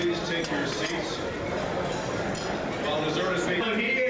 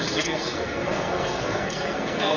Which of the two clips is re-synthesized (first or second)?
second